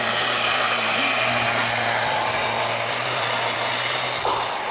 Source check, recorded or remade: remade